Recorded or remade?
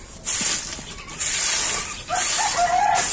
recorded